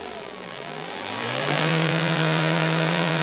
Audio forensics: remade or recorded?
remade